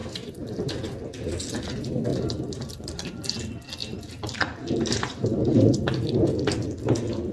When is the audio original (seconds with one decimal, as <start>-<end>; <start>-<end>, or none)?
0.7-2.1; 3.1-3.8; 6.2-7.3